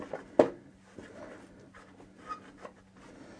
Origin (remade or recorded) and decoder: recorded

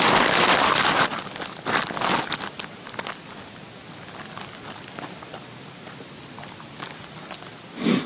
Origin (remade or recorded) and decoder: recorded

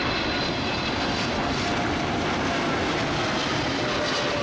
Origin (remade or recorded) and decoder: recorded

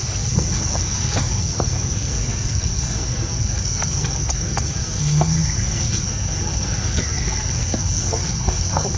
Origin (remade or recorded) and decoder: remade, codec, SNAC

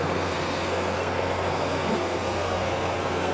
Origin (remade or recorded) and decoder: remade, codec, SNAC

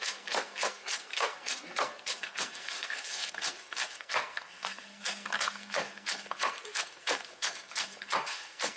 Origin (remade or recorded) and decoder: remade, codec, SNAC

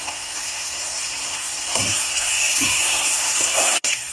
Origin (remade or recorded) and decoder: remade, codec, SNAC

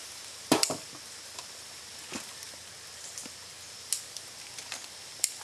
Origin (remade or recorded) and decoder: recorded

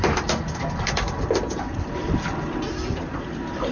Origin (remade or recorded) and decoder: recorded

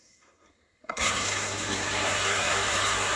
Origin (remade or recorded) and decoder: remade, codec, SNAC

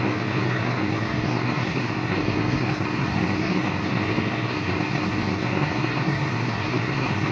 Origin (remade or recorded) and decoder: remade, codec, SNAC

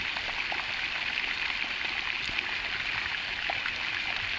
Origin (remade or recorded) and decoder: recorded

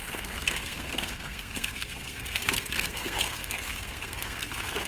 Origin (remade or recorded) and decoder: remade, codec, SNAC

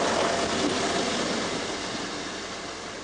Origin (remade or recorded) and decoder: recorded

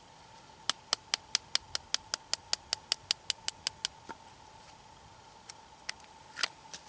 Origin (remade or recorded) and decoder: recorded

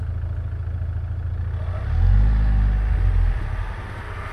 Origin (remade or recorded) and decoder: recorded